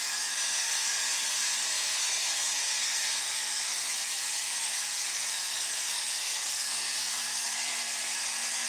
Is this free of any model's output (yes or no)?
no